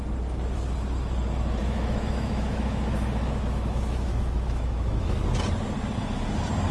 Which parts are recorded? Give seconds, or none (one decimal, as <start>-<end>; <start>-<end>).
0.0-1.6; 5.2-6.7